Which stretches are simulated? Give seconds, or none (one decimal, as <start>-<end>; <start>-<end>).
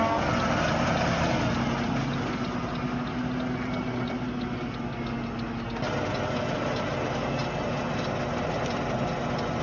none